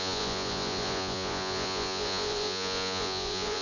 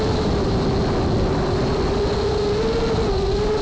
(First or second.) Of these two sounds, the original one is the second